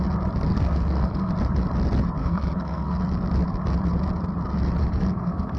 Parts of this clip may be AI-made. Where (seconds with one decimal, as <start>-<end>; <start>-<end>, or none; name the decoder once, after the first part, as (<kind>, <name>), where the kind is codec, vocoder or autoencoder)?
0.5-1.3 (codec, SNAC); 2.2-3.0; 4.8-5.6

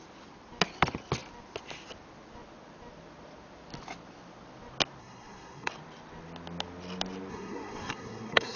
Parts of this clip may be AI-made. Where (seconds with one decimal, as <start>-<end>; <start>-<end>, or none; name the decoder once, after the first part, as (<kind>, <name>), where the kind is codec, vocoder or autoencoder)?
5.0-5.7 (codec, SNAC); 7.3-8.6